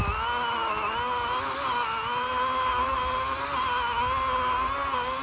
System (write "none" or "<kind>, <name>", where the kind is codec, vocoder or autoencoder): none